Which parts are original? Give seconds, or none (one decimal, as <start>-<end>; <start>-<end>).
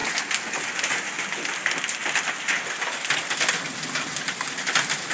0.0-5.1